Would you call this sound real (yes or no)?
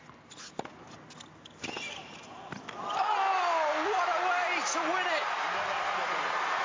yes